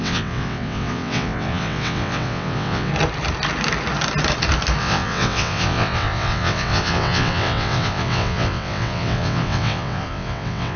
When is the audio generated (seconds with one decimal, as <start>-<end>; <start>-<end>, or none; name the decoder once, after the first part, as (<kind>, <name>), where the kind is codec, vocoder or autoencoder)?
0.0-2.9 (vocoder, WaveNeXt); 4.8-10.8